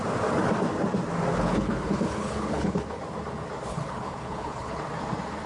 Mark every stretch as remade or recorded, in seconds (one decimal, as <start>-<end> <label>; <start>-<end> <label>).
0.0-1.3 recorded; 1.3-3.0 remade; 3.0-3.7 recorded; 3.7-4.8 remade; 4.8-5.5 recorded